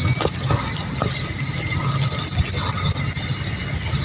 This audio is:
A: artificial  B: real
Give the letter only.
B